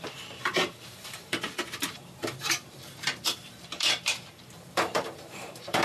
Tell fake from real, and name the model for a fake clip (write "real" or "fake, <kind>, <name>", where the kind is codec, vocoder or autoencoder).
fake, vocoder, BigVGAN v2